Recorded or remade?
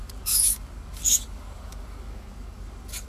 remade